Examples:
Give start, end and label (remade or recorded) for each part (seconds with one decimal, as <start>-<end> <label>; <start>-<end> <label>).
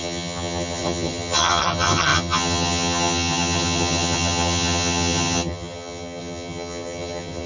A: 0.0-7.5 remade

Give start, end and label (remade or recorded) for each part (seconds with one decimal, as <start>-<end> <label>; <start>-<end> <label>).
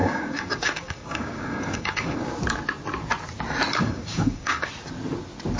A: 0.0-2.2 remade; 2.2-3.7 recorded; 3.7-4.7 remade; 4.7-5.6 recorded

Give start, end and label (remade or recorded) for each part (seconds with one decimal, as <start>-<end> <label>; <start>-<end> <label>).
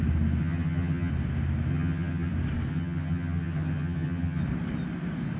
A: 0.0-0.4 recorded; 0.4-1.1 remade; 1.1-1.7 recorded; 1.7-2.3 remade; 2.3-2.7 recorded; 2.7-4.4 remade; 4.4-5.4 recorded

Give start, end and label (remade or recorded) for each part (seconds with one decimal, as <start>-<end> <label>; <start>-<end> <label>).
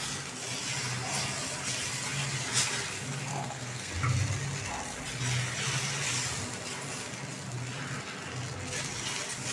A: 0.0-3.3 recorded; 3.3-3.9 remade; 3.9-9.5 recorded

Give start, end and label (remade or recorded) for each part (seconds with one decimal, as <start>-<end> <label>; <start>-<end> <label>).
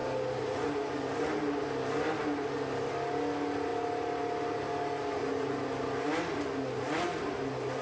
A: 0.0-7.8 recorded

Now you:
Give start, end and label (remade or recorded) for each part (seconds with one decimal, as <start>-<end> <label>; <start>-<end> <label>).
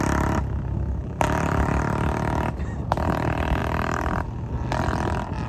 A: 0.0-1.0 recorded; 1.0-1.8 remade; 1.8-5.5 recorded